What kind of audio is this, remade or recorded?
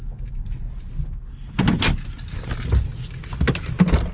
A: recorded